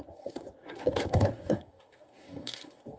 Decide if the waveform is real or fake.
fake